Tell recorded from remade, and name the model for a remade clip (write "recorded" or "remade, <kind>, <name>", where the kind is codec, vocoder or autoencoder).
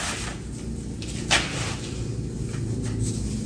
recorded